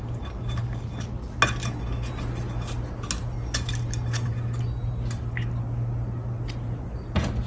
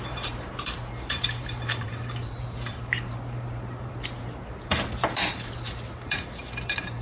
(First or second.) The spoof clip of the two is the second